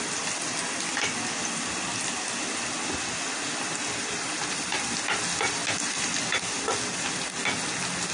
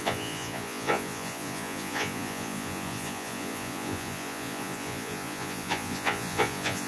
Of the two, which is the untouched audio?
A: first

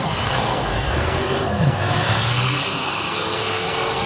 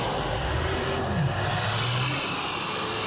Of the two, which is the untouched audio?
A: second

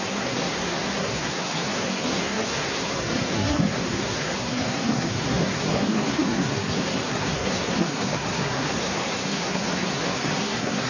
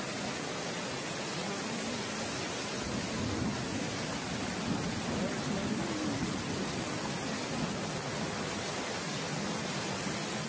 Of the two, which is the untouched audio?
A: second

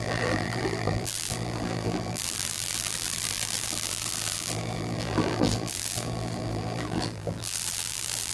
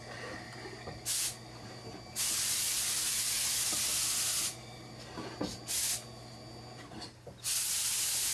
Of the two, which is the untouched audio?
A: second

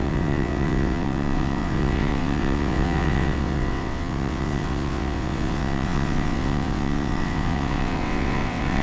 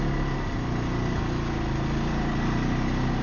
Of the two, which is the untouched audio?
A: second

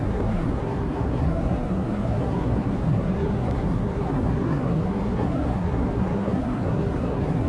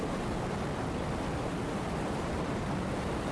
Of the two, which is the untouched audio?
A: second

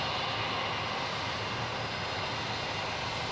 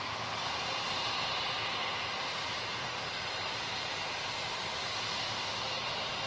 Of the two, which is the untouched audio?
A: first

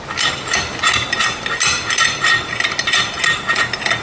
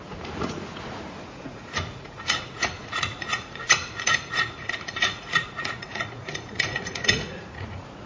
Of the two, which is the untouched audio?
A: first